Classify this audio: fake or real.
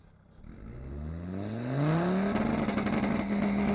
real